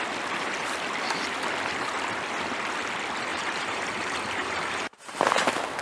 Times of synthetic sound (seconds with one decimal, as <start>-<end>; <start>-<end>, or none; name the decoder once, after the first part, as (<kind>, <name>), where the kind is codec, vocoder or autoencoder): 3.3-5.2 (vocoder, BigVGAN v2)